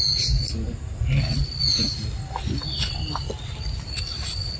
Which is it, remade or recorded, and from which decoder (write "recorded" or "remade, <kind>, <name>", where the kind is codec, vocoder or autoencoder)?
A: recorded